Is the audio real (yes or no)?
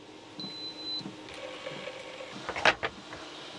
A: yes